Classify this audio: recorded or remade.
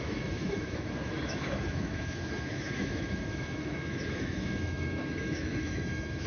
remade